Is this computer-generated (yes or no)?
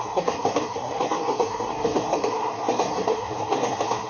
yes